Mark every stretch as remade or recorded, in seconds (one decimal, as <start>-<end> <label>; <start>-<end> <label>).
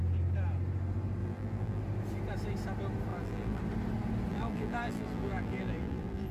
0.0-1.2 recorded; 1.2-1.8 remade; 1.8-3.1 recorded; 3.1-3.6 remade; 3.6-4.3 recorded; 4.3-6.3 remade